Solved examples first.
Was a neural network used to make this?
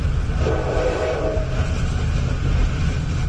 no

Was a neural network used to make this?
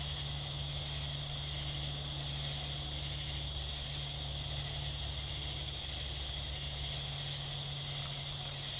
no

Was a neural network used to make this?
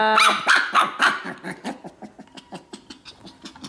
no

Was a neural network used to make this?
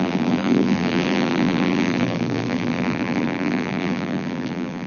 yes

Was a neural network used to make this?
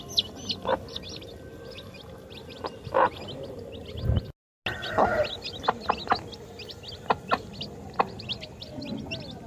no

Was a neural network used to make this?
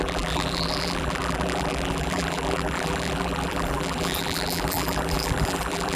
yes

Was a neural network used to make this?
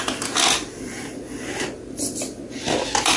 no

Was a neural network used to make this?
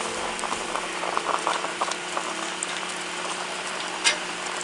yes